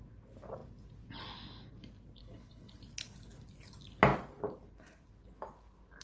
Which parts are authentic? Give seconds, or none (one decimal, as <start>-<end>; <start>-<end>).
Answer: 0.0-2.2; 2.8-6.0